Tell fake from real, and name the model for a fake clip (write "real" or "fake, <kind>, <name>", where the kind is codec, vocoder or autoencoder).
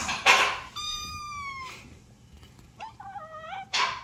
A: real